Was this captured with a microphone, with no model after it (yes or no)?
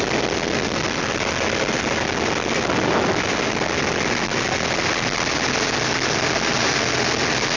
yes